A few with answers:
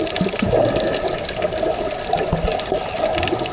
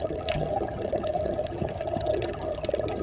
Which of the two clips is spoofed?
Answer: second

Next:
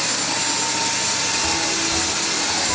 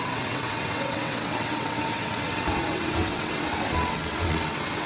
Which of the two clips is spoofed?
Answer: second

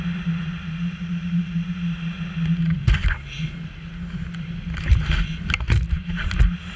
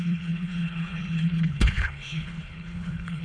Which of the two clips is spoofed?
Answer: second